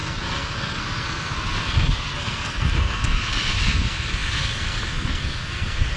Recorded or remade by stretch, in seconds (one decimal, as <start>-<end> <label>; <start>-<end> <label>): 0.0-6.0 remade